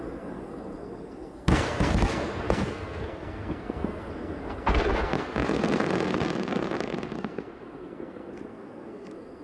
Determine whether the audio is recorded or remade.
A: remade